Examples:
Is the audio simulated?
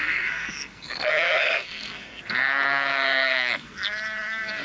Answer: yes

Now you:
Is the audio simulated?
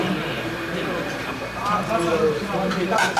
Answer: yes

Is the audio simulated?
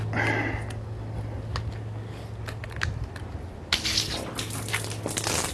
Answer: no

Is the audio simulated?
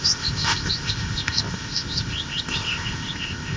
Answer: yes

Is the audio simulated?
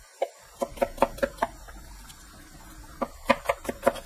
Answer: no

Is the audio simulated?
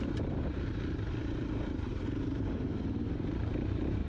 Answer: yes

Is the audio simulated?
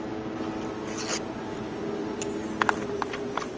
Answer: no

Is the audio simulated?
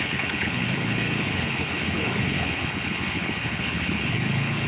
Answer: yes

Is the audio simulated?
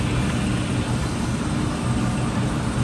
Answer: no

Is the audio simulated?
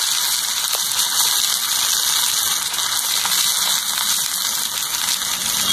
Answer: no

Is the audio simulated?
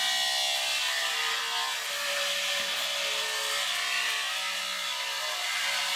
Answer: no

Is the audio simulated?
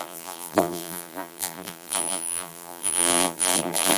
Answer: yes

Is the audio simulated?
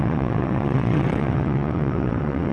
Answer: yes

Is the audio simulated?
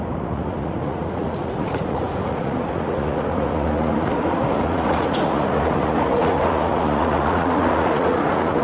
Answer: yes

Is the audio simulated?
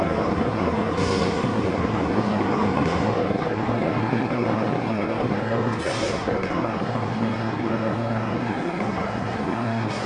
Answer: yes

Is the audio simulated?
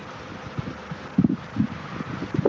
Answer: no